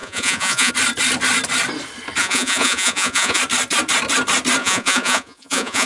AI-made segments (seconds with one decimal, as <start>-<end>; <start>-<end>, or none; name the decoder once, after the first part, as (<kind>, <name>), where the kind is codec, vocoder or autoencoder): 0.0-0.7 (vocoder, Vocos); 2.2-3.4; 4.6-5.9